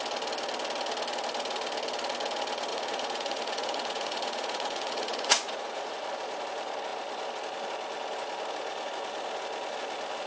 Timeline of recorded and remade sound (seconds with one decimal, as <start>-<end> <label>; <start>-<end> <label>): 0.0-2.7 recorded; 2.7-5.9 remade; 5.9-10.3 recorded